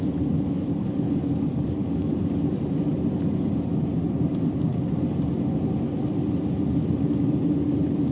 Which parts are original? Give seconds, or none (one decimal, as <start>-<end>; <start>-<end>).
0.0-0.8; 2.1-8.1